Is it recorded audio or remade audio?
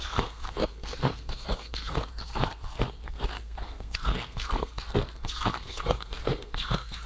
remade